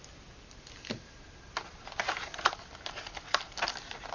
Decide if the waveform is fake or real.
real